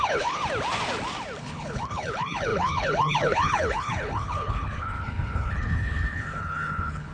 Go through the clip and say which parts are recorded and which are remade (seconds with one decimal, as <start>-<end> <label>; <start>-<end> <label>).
0.0-0.4 remade; 0.4-1.4 recorded; 1.4-7.1 remade